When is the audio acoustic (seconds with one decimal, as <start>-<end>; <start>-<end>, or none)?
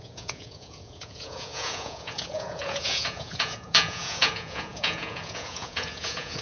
none